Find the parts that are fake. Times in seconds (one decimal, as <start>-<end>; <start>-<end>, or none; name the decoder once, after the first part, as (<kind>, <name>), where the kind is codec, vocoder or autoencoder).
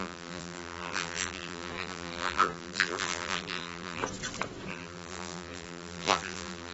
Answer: 0.0-4.0 (vocoder, BigVGAN v2); 4.7-6.7